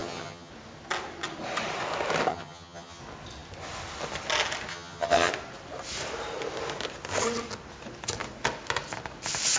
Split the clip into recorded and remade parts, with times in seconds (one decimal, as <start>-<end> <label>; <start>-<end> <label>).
0.0-0.5 remade; 0.5-2.3 recorded; 2.3-3.0 remade; 3.0-4.7 recorded; 4.7-5.3 remade; 5.3-9.6 recorded